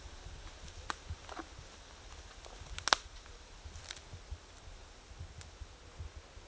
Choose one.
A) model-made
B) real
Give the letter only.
B